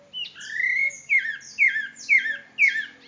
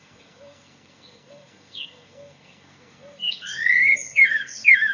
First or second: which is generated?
second